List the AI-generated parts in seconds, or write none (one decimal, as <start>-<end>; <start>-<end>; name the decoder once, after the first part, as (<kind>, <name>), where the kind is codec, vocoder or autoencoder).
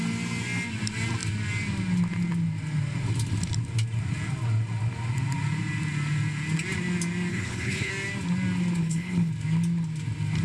7.3-7.9 (codec, HILCodec); 8.8-9.3